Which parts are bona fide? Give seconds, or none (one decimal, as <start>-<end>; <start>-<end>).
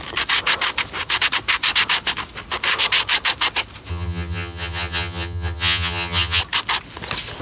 0.0-3.9; 6.4-7.4